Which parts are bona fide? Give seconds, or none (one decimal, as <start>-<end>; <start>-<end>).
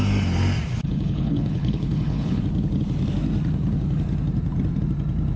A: 0.0-0.8; 2.4-5.4